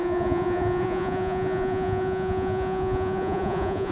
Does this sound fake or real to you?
fake